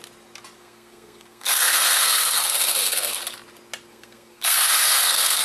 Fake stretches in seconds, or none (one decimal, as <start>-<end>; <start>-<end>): 0.6-3.2; 3.9-5.4